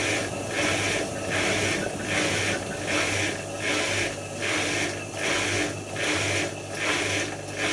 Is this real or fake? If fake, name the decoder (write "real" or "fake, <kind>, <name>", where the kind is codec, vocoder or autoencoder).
real